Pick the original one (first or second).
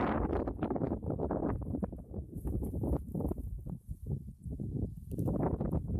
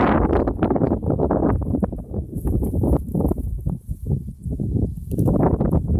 second